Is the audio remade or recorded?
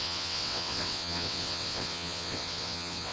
remade